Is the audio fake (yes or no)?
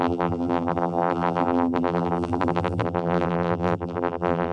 yes